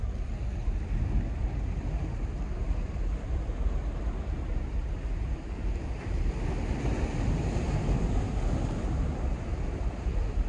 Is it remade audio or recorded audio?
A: recorded